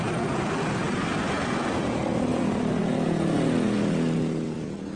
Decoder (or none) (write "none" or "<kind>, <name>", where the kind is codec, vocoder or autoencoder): none